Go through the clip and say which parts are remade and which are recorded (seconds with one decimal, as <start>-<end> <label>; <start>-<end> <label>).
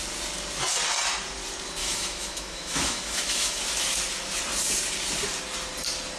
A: 0.0-1.8 recorded; 1.8-3.6 remade; 3.6-6.2 recorded